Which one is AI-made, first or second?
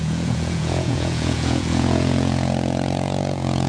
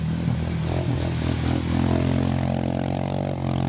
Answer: first